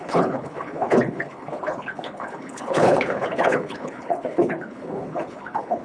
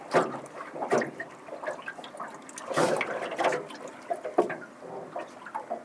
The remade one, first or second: first